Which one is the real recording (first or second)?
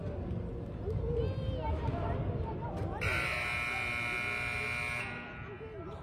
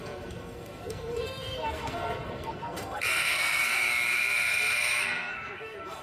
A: first